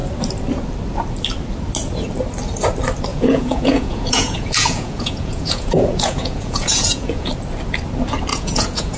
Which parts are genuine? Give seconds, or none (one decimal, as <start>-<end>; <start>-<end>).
0.0-3.1; 7.3-8.3